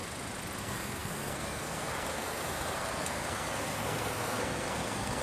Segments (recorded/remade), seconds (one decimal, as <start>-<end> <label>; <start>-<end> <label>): 0.0-0.6 recorded; 0.6-5.2 remade